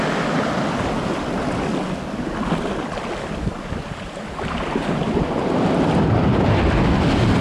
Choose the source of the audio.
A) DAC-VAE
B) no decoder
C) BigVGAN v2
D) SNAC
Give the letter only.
B